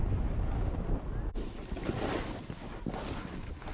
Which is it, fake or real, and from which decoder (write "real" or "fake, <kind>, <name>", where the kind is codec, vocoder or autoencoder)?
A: real